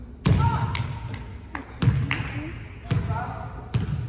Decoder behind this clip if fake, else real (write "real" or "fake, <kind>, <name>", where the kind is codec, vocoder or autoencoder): real